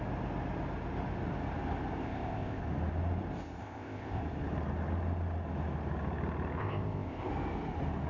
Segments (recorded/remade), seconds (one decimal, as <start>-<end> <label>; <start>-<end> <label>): 0.0-2.0 recorded; 2.0-2.6 remade; 2.6-3.6 recorded; 3.6-4.2 remade; 4.2-6.6 recorded; 6.6-7.3 remade; 7.3-8.1 recorded